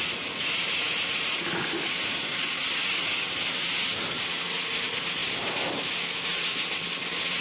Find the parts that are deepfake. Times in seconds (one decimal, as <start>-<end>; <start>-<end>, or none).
none